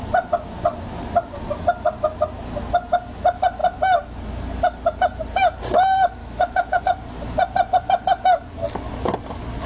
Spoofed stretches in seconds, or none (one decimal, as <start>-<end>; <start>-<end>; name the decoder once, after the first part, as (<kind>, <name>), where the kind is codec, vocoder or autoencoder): 6.2-6.8 (autoencoder, DAC-VAE)